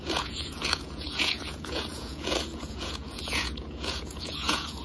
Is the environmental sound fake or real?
fake